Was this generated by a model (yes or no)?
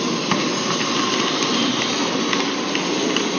no